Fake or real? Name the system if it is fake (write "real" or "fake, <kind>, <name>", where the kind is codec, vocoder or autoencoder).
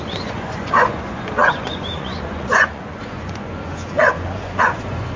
fake, vocoder, Vocos